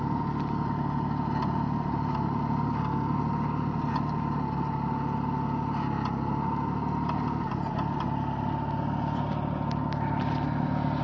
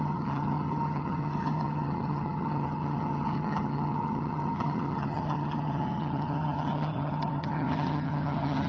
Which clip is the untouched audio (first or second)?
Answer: first